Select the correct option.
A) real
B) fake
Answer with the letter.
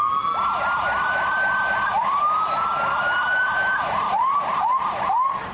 A